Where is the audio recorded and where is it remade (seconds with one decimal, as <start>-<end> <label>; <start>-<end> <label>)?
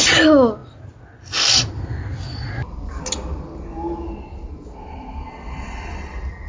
0.0-6.5 recorded